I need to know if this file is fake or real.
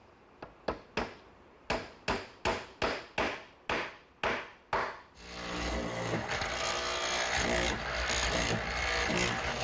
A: real